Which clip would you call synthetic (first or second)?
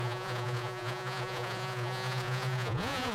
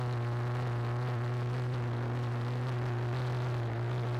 first